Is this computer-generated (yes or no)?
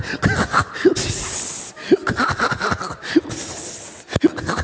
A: no